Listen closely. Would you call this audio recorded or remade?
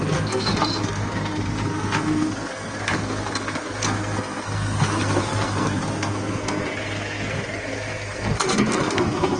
remade